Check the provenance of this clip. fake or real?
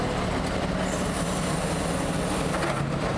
real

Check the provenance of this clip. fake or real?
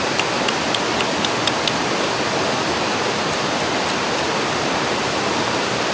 real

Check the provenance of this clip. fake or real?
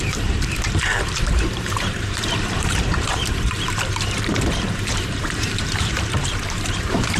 fake